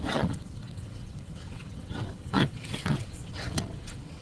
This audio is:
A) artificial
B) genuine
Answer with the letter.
A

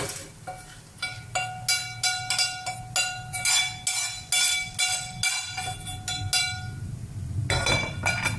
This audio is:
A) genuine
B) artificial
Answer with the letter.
A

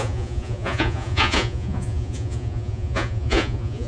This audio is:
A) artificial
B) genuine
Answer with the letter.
A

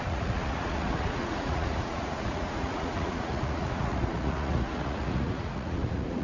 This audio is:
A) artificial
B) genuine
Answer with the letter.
A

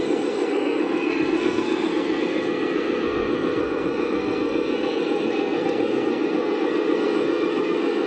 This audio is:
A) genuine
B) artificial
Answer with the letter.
B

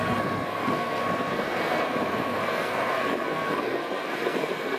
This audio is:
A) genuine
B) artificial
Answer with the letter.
B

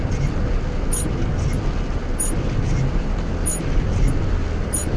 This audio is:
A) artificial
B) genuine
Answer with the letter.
B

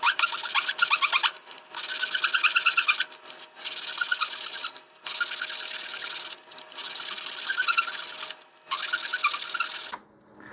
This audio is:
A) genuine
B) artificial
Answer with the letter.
A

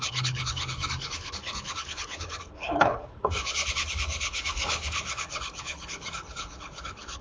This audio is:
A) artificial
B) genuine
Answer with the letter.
A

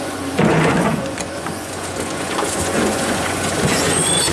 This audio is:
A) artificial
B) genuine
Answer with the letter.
A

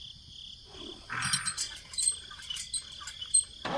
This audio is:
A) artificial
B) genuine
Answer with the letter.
B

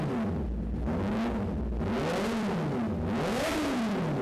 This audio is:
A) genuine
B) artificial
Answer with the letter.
A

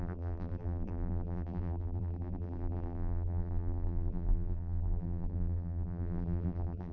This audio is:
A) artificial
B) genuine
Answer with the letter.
A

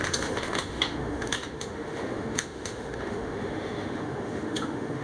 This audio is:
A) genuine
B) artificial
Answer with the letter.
B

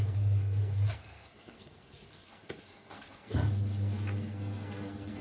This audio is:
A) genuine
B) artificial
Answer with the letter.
B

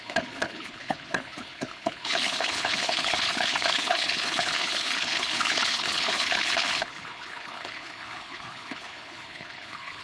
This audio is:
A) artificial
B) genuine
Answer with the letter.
A